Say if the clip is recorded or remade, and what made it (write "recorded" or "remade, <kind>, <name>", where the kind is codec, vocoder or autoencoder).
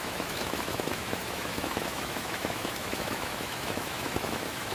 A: remade, autoencoder, DAC-VAE